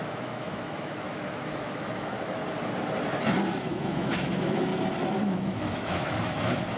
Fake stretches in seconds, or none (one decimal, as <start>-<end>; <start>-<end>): 0.0-2.4; 3.7-4.7; 5.2-6.8

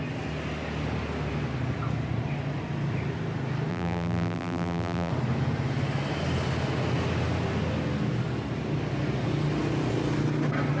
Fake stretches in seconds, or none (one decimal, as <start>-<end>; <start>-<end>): 3.7-5.1